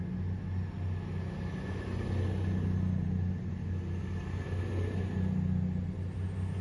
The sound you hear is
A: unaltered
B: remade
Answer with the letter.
A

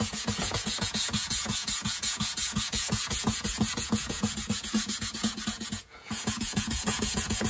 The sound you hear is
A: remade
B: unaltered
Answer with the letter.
A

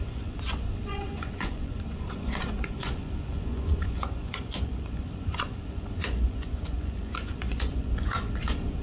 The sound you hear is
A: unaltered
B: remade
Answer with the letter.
B